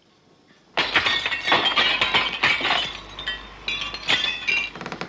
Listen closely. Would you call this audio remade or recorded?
recorded